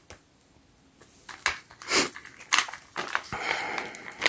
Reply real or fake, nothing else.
real